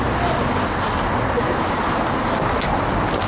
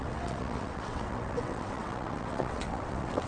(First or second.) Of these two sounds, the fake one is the second